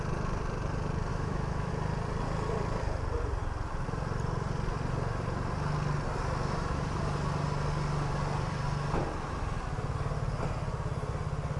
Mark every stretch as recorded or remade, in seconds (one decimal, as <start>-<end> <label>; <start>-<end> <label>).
0.0-1.1 recorded; 1.1-1.7 remade; 1.7-11.6 recorded